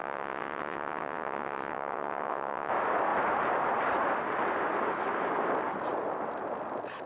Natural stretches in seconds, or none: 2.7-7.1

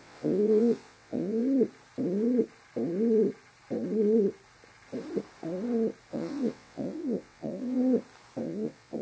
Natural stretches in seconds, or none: 1.4-6.1; 7.8-8.4

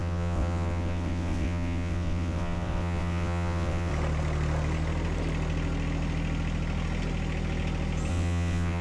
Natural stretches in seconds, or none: 3.9-8.1

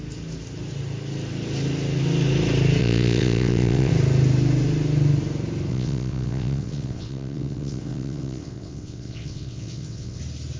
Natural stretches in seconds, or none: 0.0-2.8; 3.9-5.7; 10.2-10.6

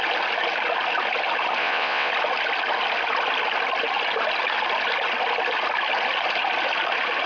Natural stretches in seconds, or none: 0.0-1.6; 2.1-7.3